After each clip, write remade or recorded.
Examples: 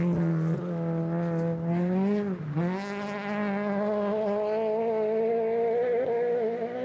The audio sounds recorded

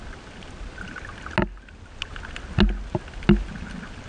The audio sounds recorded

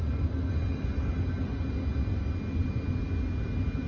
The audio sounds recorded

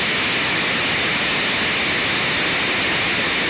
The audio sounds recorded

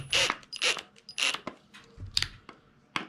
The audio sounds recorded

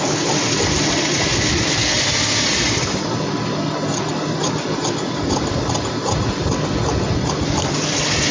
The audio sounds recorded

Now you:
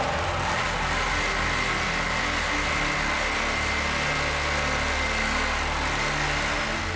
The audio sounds recorded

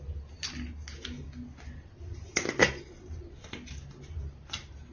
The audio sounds recorded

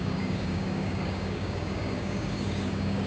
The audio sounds remade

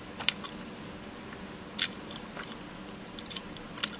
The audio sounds recorded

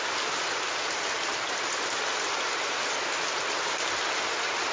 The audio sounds recorded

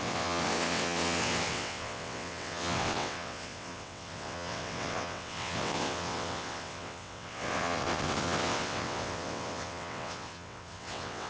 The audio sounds remade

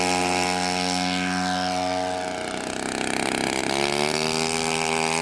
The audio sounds recorded